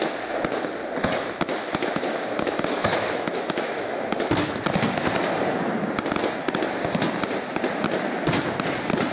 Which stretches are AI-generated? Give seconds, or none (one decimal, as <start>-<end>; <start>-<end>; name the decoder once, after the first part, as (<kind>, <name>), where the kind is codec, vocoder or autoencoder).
1.6-4.5 (autoencoder, DAC-VAE)